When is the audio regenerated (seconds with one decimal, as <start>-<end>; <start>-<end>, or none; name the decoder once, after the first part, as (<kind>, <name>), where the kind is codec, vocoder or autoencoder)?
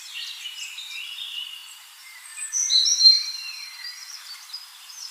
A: 0.0-5.1 (vocoder, BigVGAN v2)